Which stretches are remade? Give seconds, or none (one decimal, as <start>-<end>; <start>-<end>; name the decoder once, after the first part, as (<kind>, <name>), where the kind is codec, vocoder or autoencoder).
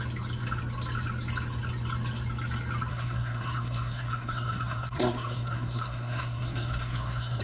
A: 2.9-7.4 (codec, SNAC)